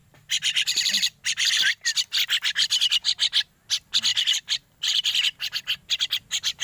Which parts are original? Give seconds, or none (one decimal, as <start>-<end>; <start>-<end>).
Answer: 1.7-4.1; 5.1-6.6